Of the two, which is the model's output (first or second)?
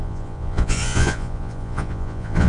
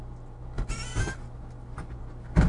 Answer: first